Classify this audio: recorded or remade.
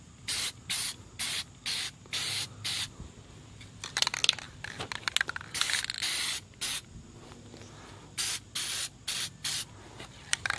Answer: recorded